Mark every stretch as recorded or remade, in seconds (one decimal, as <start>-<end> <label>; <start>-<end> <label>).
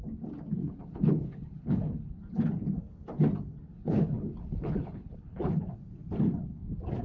0.0-0.6 recorded; 0.6-2.1 remade; 2.1-3.7 recorded; 3.7-5.6 remade; 5.6-7.0 recorded